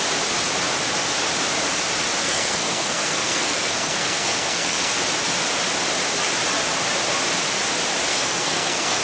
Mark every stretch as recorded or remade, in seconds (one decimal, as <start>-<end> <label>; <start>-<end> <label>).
0.0-2.2 recorded; 2.2-5.0 remade; 5.0-8.1 recorded; 8.1-9.0 remade